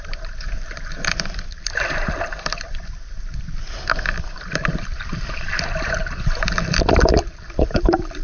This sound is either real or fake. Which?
fake